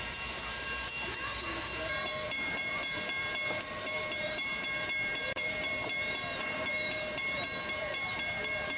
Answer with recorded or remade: remade